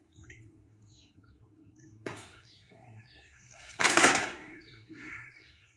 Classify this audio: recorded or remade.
remade